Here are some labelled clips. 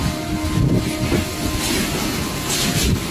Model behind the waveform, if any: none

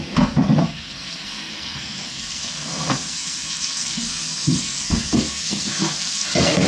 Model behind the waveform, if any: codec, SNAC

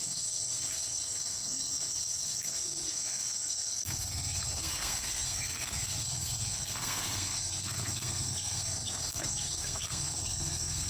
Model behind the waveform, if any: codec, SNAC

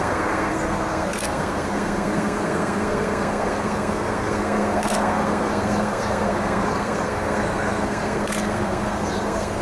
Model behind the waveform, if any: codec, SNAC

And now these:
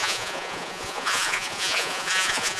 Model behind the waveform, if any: vocoder, Vocos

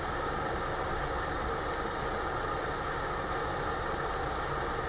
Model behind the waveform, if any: none